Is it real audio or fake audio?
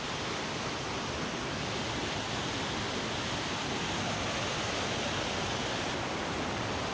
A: real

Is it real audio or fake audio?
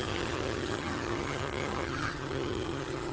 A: fake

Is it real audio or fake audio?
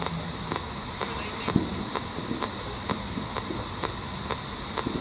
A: real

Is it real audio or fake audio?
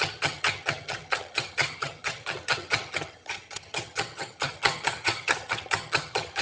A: fake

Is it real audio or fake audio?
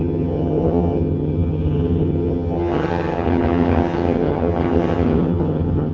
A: fake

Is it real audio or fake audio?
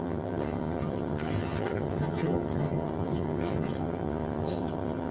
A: fake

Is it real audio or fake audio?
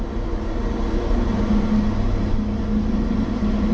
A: real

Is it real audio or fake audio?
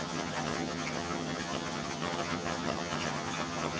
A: fake